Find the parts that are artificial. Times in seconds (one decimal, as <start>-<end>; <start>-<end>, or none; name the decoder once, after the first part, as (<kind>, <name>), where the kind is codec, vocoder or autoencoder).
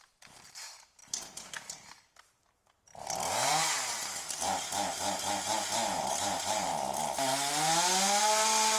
0.0-1.0 (vocoder, BigVGAN v2); 2.5-2.9; 6.0-6.7; 8.2-8.8